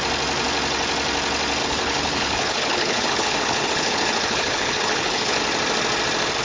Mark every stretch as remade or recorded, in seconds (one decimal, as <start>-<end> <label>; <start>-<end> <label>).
0.0-1.6 recorded; 1.6-5.4 remade; 5.4-6.4 recorded